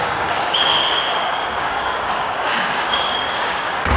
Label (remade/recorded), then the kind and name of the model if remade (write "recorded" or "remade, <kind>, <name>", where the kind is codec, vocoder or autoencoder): remade, codec, DAC